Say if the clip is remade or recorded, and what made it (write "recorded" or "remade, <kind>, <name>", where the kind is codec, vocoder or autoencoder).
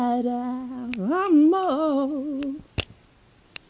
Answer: recorded